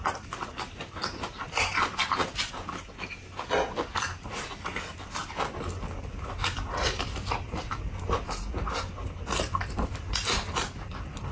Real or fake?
real